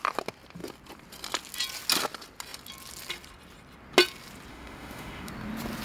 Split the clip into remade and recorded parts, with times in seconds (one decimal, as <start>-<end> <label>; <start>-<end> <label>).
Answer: 0.0-4.5 recorded; 4.5-5.3 remade; 5.3-5.8 recorded